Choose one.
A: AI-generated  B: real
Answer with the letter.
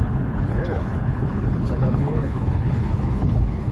A